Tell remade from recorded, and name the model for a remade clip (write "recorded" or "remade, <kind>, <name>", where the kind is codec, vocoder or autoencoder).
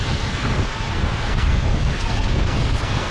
remade, codec, SNAC